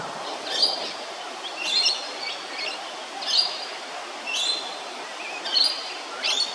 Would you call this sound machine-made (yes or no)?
no